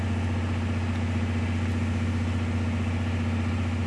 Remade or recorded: recorded